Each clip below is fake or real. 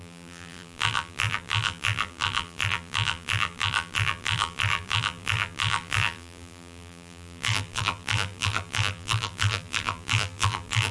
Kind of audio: fake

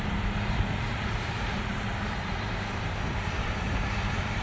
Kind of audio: fake